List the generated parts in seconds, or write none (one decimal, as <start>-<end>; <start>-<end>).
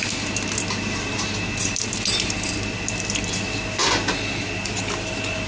none